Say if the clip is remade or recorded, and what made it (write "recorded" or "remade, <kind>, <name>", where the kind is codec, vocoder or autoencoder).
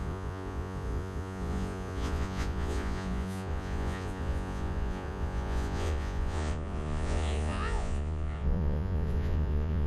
remade, vocoder, Vocos